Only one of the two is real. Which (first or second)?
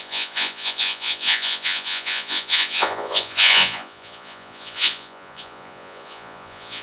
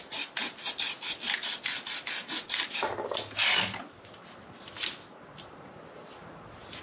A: second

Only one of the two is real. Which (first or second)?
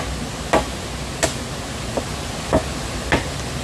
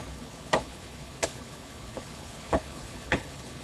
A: first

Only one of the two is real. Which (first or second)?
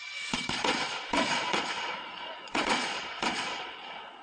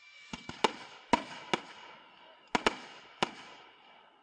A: second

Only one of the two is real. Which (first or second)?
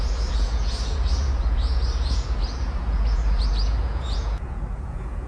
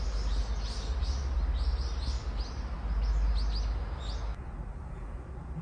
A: second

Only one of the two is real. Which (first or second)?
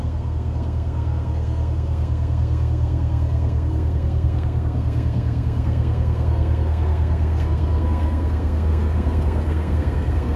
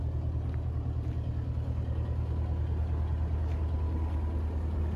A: second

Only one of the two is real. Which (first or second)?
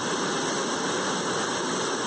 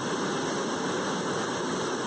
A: second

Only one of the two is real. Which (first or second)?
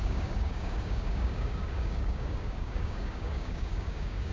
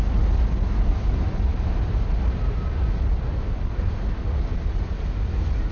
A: second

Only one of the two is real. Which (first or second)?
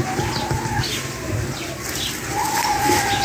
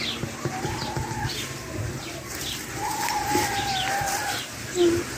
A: first